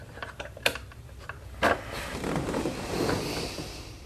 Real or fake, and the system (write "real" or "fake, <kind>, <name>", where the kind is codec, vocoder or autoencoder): fake, vocoder, BigVGAN v2